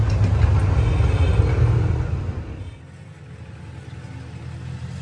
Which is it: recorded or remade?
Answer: recorded